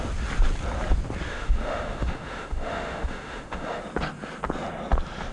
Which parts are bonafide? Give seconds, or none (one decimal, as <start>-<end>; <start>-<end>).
0.0-1.3; 3.8-5.3